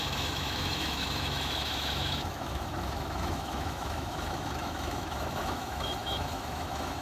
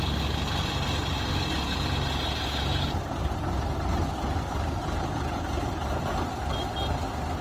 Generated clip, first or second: first